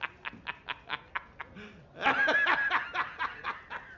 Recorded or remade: recorded